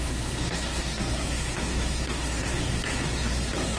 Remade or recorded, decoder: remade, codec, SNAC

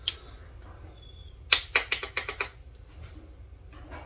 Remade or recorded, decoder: recorded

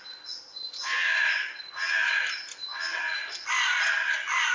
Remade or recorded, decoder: recorded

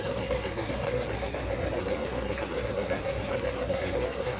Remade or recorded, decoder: remade, codec, SNAC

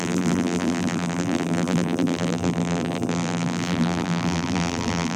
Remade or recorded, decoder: remade, vocoder, BigVGAN v2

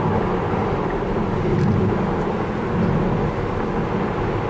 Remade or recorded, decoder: recorded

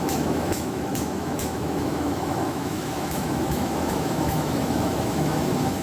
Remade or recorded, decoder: remade, autoencoder, DAC-VAE